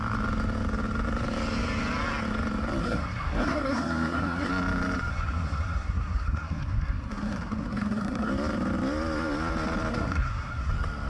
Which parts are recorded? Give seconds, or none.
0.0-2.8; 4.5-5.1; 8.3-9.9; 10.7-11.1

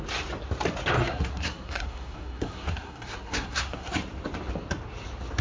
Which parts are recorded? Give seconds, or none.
0.0-1.0; 3.9-5.4

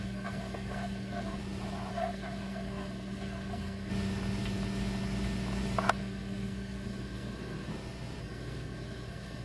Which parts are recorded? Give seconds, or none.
1.4-1.9; 3.9-5.9; 7.7-8.2

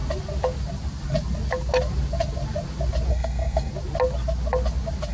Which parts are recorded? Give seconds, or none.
0.0-3.1; 3.7-5.1